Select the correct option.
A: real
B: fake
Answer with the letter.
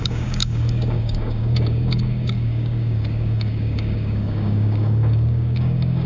B